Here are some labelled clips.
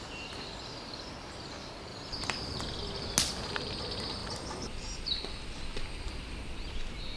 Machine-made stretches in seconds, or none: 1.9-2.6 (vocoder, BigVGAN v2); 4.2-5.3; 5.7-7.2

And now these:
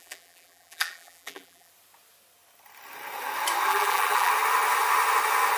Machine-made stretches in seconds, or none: 0.0-1.7 (vocoder, BigVGAN v2); 3.7-4.3

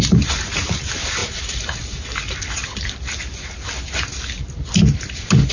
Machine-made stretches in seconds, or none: 1.2-2.2 (vocoder, BigVGAN v2)

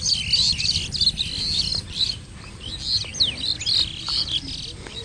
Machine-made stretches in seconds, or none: 1.7-2.3 (vocoder, BigVGAN v2)